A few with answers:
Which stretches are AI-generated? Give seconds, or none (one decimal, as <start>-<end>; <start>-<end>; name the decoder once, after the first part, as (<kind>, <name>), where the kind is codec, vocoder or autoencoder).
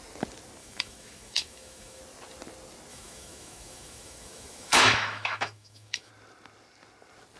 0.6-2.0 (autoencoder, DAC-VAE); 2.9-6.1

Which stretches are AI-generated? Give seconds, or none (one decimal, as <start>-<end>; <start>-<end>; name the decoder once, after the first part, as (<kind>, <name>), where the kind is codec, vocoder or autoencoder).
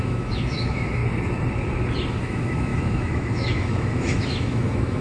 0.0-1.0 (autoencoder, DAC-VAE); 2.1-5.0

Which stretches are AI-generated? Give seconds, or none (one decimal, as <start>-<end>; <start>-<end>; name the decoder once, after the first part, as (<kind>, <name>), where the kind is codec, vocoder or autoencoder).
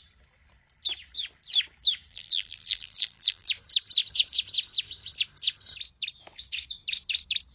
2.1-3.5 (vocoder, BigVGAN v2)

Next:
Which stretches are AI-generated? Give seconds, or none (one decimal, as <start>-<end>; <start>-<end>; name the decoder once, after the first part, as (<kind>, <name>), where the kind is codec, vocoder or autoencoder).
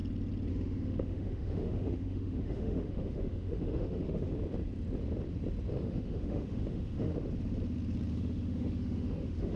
0.5-4.3 (autoencoder, DAC-VAE); 5.7-7.1; 8.1-9.6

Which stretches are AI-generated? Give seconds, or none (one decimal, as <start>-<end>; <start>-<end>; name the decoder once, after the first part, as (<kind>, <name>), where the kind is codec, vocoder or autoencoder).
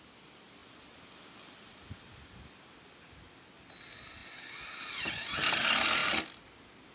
none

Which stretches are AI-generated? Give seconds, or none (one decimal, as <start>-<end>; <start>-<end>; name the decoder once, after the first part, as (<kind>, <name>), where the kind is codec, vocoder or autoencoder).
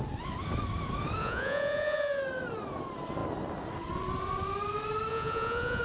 1.2-2.2 (vocoder, Vocos); 5.1-5.8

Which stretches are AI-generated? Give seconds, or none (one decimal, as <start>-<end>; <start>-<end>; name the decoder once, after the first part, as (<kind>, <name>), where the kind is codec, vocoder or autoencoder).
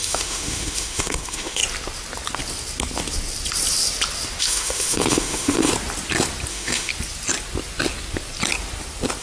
0.0-1.6 (autoencoder, DAC-VAE); 4.4-5.7; 6.5-6.9